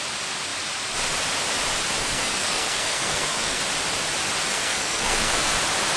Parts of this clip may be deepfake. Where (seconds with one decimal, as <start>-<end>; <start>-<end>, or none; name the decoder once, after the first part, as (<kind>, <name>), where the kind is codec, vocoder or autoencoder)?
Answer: 2.0-3.6 (codec, SNAC); 4.5-5.6